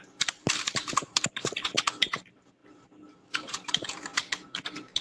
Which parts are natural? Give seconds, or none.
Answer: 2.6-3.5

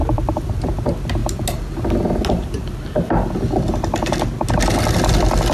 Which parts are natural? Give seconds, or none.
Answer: 0.5-5.5

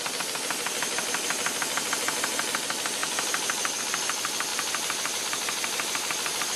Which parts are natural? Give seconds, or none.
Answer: 0.0-3.0; 3.8-4.5; 5.2-6.6

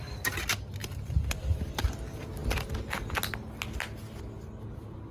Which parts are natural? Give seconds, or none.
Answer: 0.0-0.8; 1.6-5.1

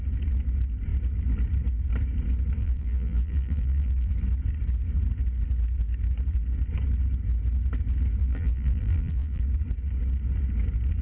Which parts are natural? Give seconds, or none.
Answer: 0.0-2.6; 4.1-8.2; 9.4-11.0

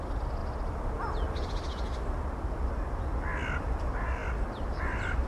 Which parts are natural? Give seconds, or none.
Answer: 0.0-4.2

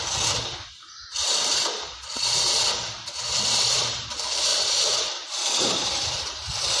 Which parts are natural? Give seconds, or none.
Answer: 0.0-1.1; 4.1-4.5